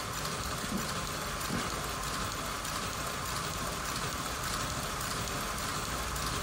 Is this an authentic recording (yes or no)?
yes